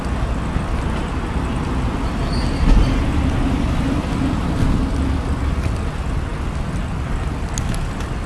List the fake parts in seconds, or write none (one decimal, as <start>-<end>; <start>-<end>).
none